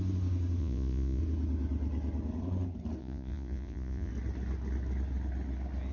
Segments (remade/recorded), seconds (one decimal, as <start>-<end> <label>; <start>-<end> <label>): 0.0-0.6 recorded; 0.6-1.2 remade; 1.2-3.0 recorded; 3.0-4.1 remade; 4.1-5.9 recorded